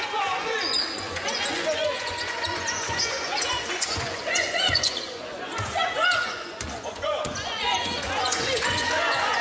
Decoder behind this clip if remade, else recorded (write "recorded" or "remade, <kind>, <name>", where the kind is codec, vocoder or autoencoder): remade, vocoder, Vocos